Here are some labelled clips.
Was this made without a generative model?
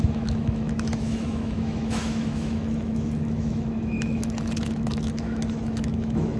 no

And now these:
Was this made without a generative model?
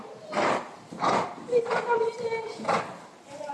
yes